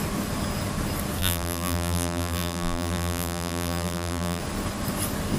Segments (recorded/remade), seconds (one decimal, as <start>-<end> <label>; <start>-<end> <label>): 0.0-1.2 recorded; 1.2-4.4 remade; 4.4-5.4 recorded